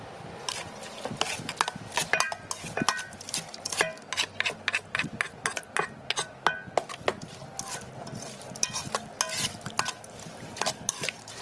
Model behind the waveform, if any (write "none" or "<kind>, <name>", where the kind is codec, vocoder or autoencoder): none